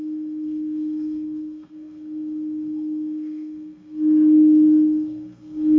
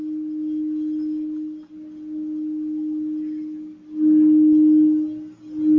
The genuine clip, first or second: second